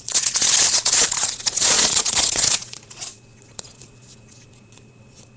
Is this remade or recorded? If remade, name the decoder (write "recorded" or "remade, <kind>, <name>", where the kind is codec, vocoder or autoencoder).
remade, vocoder, Vocos